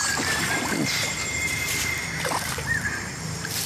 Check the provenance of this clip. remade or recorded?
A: remade